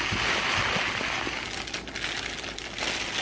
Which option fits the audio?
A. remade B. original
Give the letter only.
B